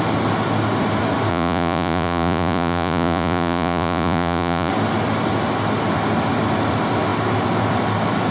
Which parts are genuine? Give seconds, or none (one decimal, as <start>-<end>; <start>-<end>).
0.0-1.3; 4.7-8.3